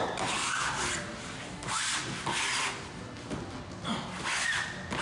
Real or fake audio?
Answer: real